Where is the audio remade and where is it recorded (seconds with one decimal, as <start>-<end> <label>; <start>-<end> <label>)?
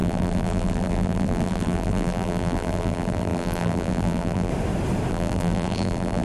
0.0-4.5 remade; 4.5-5.1 recorded; 5.1-6.2 remade